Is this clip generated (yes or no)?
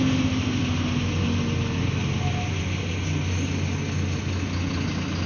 no